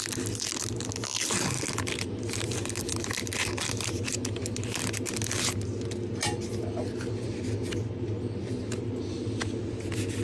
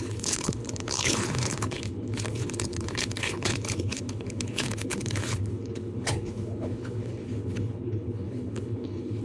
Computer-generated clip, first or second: second